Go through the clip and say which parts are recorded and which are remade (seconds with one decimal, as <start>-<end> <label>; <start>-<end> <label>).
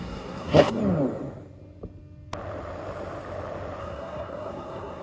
0.0-0.8 remade; 0.8-3.8 recorded; 3.8-5.0 remade